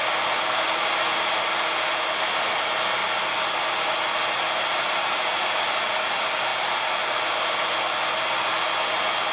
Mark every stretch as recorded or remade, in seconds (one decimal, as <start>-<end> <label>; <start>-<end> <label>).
0.0-9.3 recorded